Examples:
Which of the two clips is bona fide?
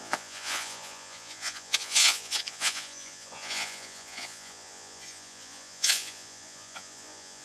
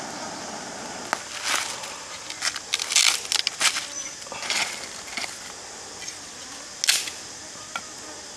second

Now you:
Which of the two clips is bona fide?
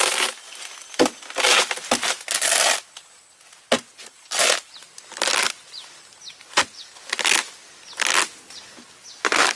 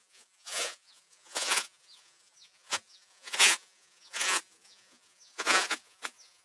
first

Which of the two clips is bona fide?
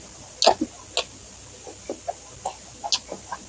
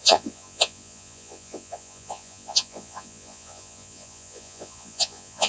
first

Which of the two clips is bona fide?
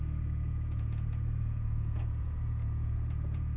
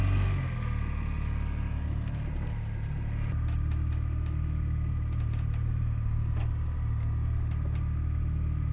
second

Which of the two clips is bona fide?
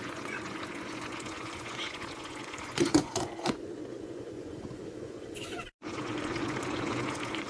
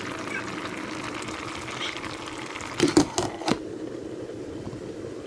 second